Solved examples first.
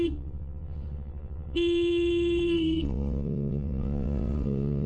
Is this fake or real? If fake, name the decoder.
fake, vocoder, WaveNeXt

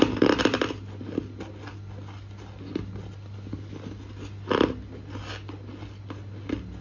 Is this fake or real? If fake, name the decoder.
real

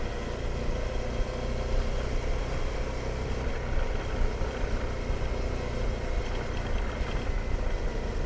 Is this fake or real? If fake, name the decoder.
real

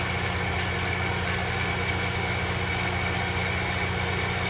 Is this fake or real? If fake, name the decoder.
real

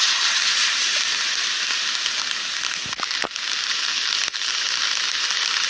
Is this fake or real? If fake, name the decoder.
real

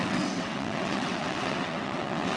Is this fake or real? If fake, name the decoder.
fake, vocoder, WaveNeXt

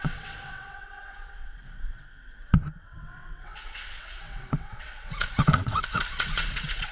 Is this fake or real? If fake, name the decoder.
fake, vocoder, WaveNeXt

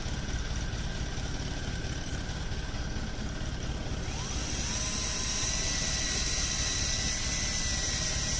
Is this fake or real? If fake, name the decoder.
real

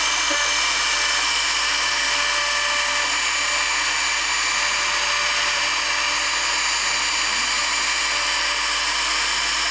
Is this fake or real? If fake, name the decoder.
real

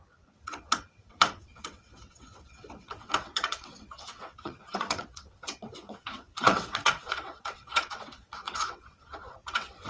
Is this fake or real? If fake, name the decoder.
fake, vocoder, WaveNeXt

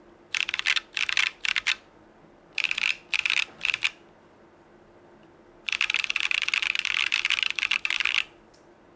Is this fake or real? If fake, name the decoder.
real